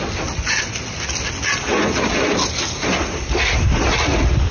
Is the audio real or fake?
real